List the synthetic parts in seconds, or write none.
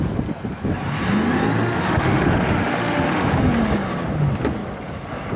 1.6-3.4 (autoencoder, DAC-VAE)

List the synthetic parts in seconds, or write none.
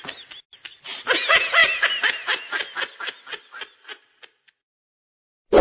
none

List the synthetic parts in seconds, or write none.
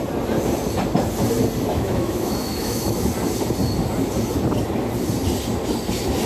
1.7-3.1 (autoencoder, DAC-VAE)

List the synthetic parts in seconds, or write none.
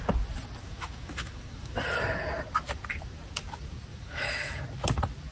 0.6-1.8 (autoencoder, DAC-VAE); 3.9-4.6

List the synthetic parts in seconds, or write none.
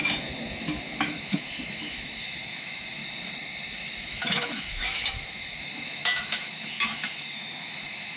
0.0-3.0 (autoencoder, DAC-VAE); 4.0-8.2